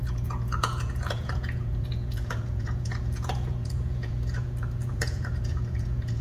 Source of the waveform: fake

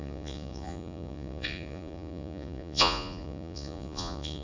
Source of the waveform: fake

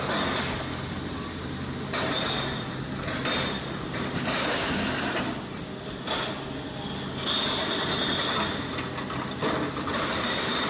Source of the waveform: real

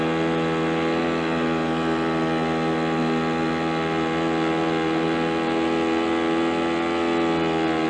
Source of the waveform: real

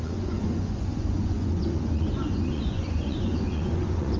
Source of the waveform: fake